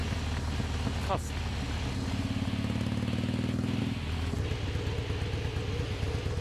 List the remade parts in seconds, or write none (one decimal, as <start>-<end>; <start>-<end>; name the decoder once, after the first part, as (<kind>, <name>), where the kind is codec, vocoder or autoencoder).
none

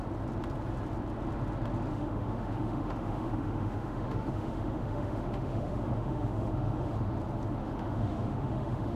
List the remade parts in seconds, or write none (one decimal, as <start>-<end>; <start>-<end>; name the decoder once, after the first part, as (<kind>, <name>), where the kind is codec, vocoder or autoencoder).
1.9-6.9 (autoencoder, DAC-VAE); 7.6-9.0

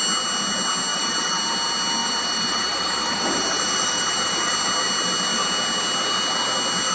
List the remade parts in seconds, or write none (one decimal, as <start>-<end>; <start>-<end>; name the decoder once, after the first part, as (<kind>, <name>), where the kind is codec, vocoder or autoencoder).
0.9-1.4 (vocoder, BigVGAN v2); 2.0-4.5

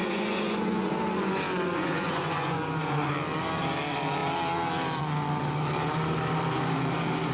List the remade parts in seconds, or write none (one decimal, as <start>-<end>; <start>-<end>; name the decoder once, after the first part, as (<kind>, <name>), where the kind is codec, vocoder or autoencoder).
0.0-0.9 (vocoder, Vocos); 1.7-3.1

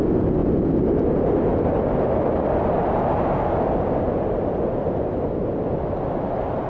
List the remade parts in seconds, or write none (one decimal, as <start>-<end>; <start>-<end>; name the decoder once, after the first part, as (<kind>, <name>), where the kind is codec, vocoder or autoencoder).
none

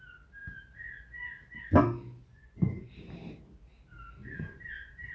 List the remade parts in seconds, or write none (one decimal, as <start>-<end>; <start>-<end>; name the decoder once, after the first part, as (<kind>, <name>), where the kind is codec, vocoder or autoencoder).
2.2-2.9 (vocoder, Vocos); 4.2-5.1

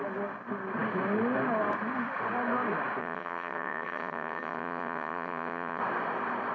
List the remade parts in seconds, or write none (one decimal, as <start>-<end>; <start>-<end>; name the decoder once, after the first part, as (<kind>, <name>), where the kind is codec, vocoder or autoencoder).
3.0-5.8 (vocoder, HiFi-GAN)